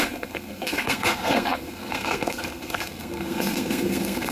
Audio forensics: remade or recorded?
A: remade